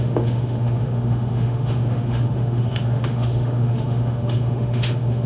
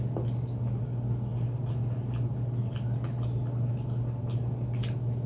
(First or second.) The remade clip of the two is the first